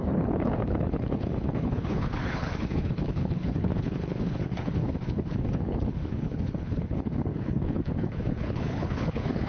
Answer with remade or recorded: remade